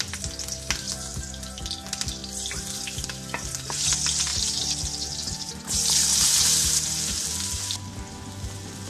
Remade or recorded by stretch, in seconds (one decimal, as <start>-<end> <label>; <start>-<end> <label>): 0.0-1.1 recorded; 1.1-1.6 remade; 1.6-4.3 recorded; 4.3-7.2 remade; 7.2-8.9 recorded